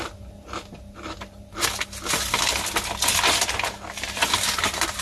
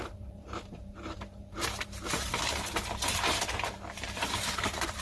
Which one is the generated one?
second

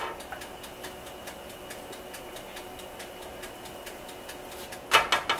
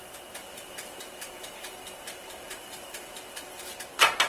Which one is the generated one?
second